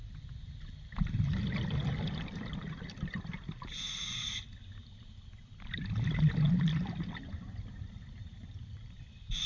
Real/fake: fake